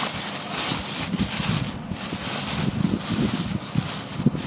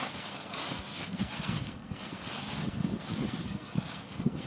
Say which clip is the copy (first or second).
second